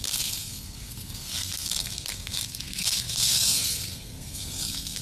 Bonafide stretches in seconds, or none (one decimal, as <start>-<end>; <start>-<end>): none